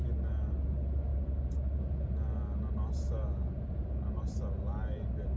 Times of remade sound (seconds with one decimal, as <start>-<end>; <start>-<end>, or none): none